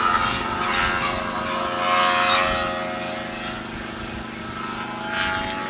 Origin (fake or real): real